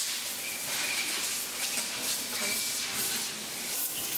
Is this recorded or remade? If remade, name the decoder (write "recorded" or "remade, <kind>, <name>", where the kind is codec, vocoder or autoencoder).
recorded